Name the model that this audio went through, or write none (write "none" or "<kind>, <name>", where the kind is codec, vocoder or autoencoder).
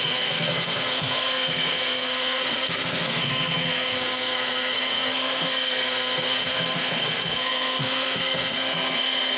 codec, SNAC